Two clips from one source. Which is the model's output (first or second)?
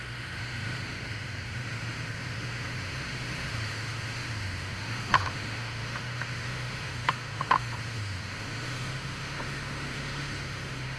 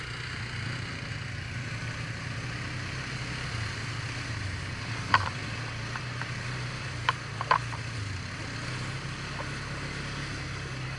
first